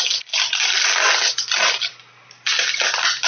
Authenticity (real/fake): real